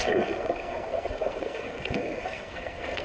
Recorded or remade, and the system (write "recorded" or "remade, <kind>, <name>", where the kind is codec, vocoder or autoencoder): remade, codec, SNAC